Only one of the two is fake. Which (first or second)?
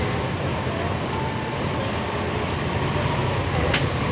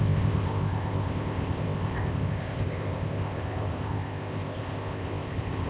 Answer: second